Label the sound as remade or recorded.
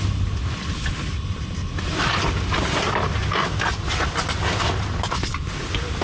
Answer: recorded